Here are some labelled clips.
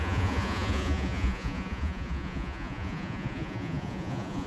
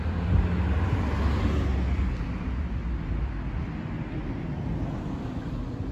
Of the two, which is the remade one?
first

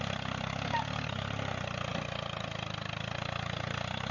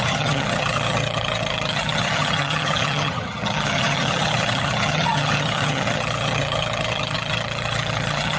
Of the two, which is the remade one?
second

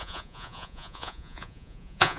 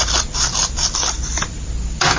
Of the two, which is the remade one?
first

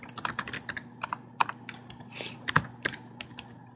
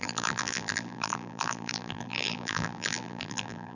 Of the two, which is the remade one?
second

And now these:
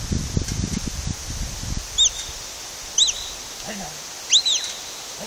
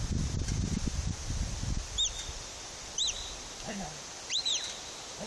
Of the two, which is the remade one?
second